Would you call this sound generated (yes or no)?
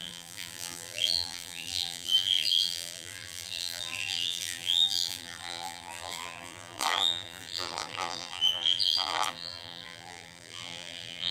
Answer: yes